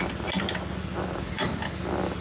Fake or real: real